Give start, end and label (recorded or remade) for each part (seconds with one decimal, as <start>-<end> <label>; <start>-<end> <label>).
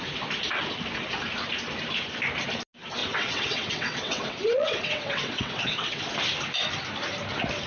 0.0-3.0 recorded; 3.0-6.0 remade; 6.0-7.7 recorded